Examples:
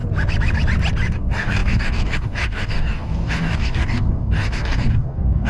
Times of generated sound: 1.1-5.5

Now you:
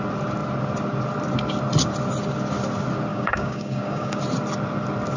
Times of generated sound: 3.1-4.2

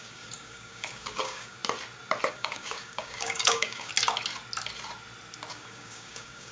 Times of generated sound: 0.0-1.6; 2.3-3.9; 5.5-6.5

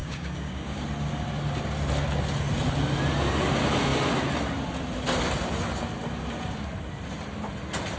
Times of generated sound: 0.0-0.8

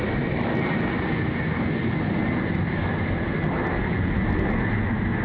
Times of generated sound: none